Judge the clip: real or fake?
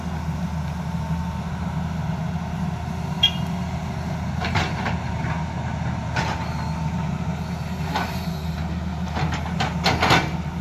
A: real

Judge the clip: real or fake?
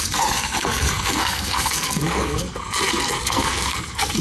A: fake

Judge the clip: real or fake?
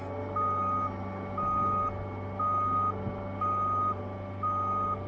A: real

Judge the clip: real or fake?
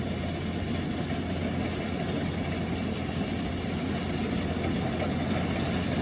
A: real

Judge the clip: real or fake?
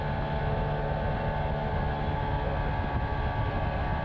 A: real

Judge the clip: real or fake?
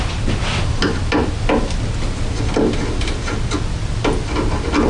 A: real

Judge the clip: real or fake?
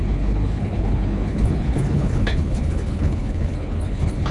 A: fake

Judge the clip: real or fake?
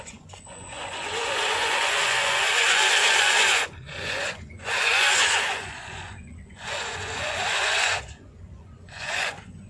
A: fake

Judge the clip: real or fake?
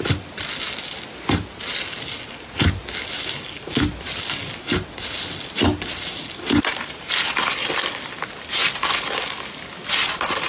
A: real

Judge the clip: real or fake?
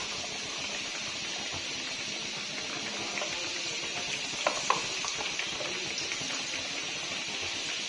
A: real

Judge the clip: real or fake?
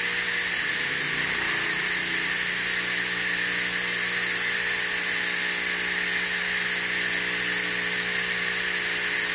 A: real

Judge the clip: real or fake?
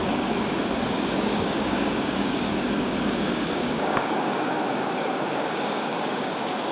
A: fake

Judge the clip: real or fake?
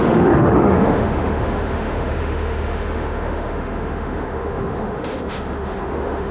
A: fake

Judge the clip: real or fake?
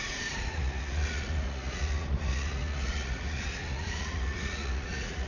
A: fake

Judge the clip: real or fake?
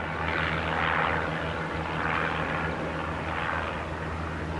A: real